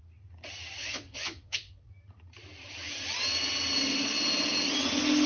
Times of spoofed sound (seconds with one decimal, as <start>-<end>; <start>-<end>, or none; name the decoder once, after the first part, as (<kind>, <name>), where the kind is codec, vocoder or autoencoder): 0.8-1.9 (vocoder, Vocos)